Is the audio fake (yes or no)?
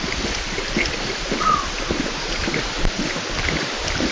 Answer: no